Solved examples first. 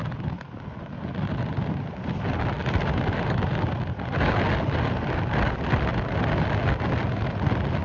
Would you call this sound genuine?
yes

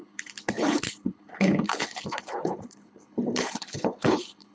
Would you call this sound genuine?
no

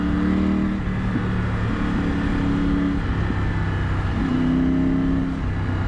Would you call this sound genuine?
yes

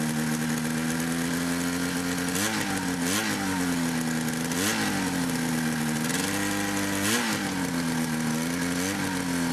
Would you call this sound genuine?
yes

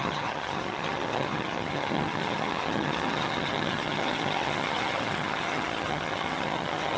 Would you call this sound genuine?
no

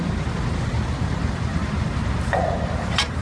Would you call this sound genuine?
no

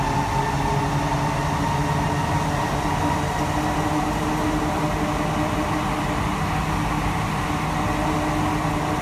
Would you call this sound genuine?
yes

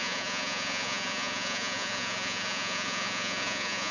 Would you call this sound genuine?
no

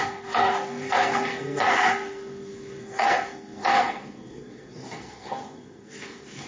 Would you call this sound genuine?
no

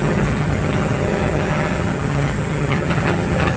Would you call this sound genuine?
no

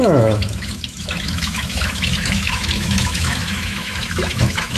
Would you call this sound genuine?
no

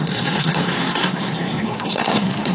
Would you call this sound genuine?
no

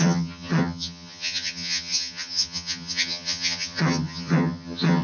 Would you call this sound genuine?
no